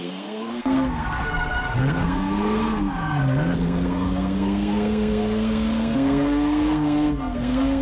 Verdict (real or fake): fake